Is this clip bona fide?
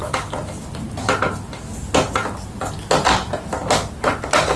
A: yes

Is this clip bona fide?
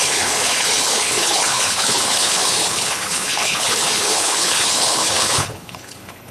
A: no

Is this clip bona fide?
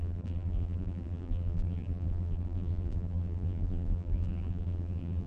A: no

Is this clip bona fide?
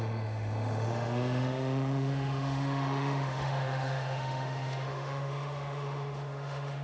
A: no